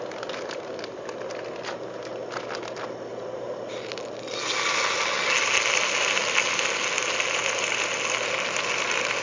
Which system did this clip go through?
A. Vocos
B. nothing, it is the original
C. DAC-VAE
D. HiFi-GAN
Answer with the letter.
B